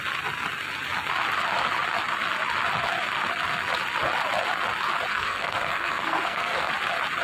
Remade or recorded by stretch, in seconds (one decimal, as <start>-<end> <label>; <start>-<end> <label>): 0.0-5.1 recorded; 5.1-6.7 remade; 6.7-7.2 recorded